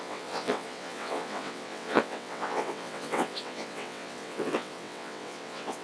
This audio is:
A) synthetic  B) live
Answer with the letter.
A